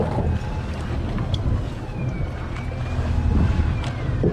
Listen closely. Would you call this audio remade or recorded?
recorded